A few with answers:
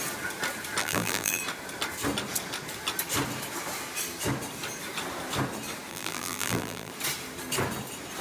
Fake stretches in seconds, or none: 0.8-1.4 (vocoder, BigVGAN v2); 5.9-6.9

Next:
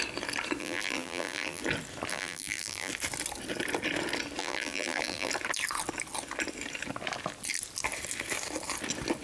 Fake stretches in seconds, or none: 0.6-1.6 (vocoder, BigVGAN v2); 2.1-2.9; 4.4-5.3